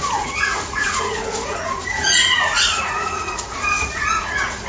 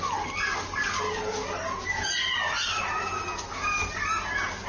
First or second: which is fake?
first